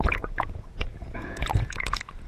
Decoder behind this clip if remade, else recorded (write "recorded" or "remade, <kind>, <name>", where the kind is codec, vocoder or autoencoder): remade, vocoder, Vocos